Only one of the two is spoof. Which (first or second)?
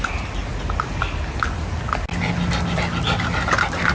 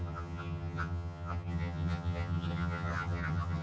second